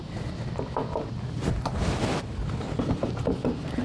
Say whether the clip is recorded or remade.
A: remade